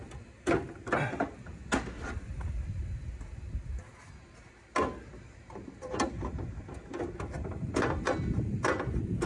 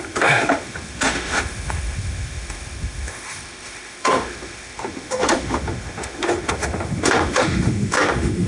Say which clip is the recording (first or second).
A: first